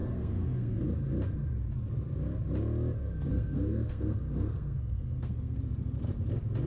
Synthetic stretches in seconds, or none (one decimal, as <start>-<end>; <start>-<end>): 0.0-0.8; 3.3-5.6